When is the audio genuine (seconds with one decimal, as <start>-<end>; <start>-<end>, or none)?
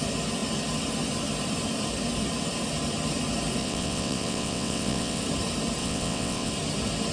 0.0-3.6; 5.2-5.8; 6.5-7.1